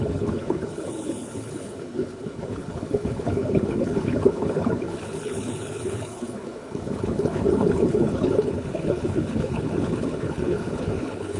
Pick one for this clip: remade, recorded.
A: remade